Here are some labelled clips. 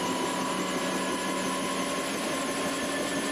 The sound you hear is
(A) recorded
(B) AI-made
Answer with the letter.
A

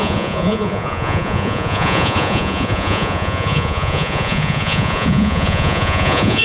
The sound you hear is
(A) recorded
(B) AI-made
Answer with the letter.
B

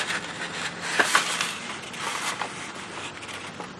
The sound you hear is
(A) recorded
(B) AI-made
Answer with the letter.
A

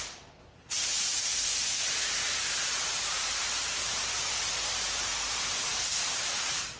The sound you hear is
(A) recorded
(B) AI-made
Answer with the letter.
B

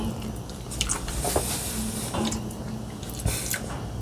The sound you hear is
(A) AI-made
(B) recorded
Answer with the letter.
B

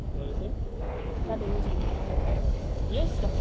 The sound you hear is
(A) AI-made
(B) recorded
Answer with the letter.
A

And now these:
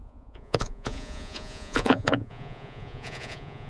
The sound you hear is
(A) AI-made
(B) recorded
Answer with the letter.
A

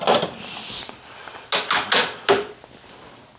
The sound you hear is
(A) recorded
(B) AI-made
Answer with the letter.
A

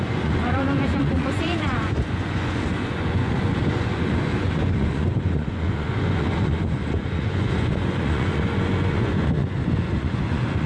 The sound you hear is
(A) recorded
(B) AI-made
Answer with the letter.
B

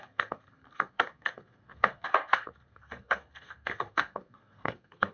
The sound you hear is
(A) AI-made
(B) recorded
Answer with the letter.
A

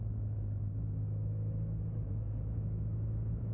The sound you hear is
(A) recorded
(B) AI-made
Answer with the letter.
B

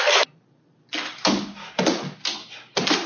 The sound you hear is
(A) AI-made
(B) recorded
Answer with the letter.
B